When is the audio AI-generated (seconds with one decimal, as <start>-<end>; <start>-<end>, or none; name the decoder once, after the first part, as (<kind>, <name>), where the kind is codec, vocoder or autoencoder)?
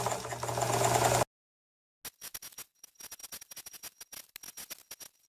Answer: none